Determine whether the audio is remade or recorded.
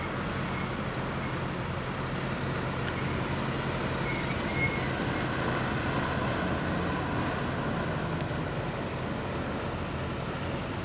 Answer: recorded